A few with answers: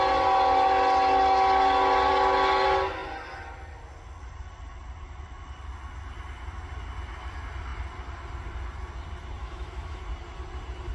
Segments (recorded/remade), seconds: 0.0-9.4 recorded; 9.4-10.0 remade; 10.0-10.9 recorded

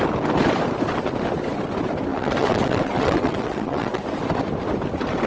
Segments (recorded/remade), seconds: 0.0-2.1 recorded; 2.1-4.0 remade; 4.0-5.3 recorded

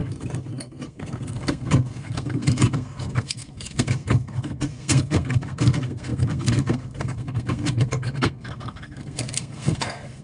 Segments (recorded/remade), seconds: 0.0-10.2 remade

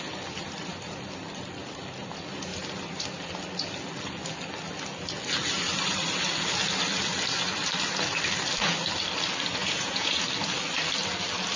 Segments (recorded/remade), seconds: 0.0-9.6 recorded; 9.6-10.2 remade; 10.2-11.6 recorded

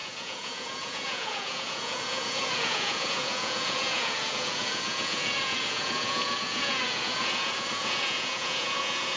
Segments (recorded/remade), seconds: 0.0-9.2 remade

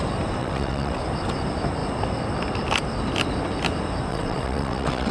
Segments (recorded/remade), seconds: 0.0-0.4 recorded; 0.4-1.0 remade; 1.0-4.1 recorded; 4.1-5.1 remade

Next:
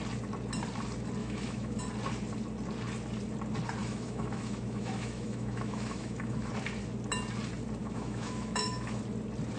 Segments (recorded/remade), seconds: 0.0-1.2 recorded; 1.2-1.8 remade; 1.8-3.8 recorded; 3.8-6.5 remade; 6.5-7.8 recorded; 7.8-9.0 remade; 9.0-9.6 recorded